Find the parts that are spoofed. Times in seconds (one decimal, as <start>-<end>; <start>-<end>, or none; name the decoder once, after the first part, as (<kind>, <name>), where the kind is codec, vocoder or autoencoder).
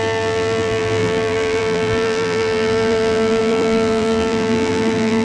0.0-5.2 (vocoder, BigVGAN v2)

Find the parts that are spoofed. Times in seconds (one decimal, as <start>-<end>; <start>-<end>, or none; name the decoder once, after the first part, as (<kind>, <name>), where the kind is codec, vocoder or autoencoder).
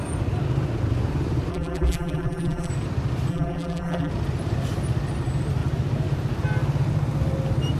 1.5-2.7 (vocoder, BigVGAN v2); 3.3-4.1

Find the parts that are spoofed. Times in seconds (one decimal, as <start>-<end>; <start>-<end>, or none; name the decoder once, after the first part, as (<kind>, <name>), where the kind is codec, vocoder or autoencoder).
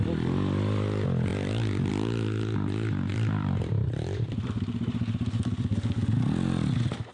3.1-7.1 (vocoder, BigVGAN v2)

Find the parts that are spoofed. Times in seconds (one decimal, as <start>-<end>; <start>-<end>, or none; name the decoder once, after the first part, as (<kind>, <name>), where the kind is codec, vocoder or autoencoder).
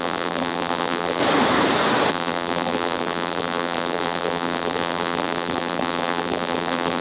0.0-1.2 (vocoder, BigVGAN v2); 2.1-7.0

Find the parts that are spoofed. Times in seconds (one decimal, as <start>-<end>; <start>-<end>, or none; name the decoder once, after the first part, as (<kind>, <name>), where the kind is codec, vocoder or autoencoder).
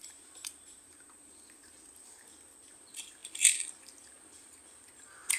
0.0-1.3 (vocoder, BigVGAN v2)